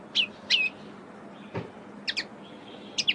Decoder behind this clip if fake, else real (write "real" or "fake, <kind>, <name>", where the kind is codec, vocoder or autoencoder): real